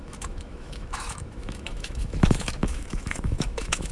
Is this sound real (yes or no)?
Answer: no